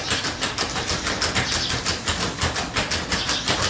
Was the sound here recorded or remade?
recorded